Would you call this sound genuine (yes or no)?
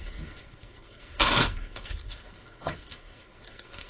no